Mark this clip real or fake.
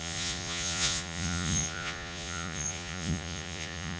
fake